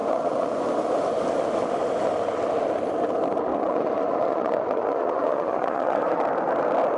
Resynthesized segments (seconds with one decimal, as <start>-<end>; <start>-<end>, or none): 0.0-0.7; 3.5-6.2